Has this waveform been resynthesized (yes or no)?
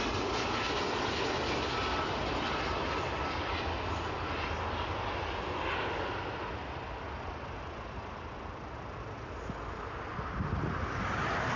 no